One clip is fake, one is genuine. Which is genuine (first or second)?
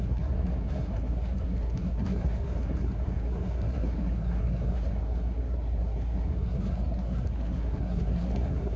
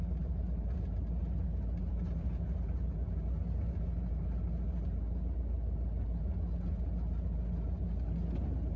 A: second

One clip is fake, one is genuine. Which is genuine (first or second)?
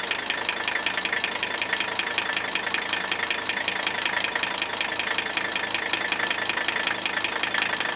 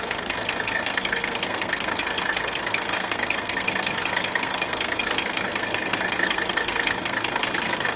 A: first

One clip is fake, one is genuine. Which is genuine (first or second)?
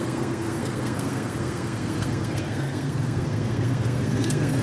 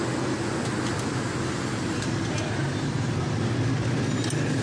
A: second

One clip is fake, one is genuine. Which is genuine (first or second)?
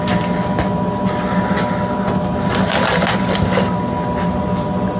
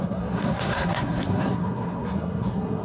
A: first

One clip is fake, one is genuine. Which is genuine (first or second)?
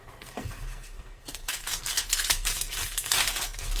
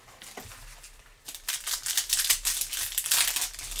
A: second